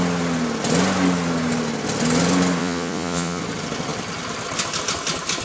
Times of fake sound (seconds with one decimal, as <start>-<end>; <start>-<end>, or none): 2.6-3.4